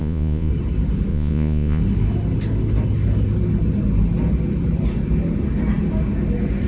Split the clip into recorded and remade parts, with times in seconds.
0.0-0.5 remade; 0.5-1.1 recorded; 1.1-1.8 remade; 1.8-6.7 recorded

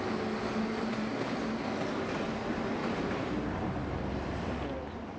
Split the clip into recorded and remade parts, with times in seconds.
0.0-0.4 recorded; 0.4-1.5 remade; 1.5-2.8 recorded; 2.8-3.3 remade; 3.3-3.8 recorded; 3.8-5.2 remade

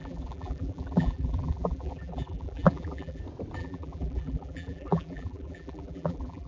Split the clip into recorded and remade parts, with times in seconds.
0.0-3.2 remade; 3.2-3.6 recorded; 3.6-6.5 remade

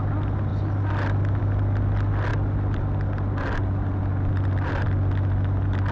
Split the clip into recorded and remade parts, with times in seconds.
0.0-2.3 recorded; 2.3-5.9 remade

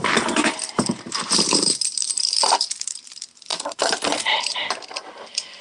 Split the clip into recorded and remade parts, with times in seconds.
0.0-2.2 remade; 2.2-3.5 recorded; 3.5-4.2 remade; 4.2-5.6 recorded

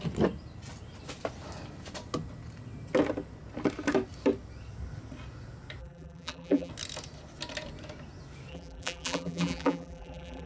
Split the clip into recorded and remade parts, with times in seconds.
0.0-5.8 recorded; 5.8-6.7 remade; 6.7-8.5 recorded; 8.5-10.5 remade

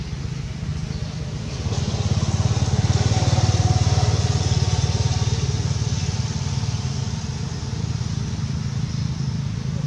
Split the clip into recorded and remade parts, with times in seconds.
0.0-9.9 recorded